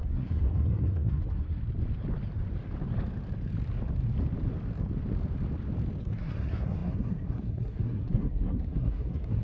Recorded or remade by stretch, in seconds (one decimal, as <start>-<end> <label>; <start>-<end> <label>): 0.0-1.6 remade; 1.6-6.0 recorded; 6.0-9.4 remade